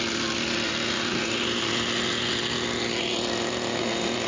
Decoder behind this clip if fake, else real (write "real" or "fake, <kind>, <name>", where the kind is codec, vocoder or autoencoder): real